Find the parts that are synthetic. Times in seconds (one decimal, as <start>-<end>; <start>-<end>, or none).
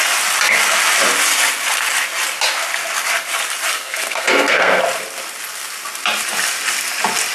3.7-4.8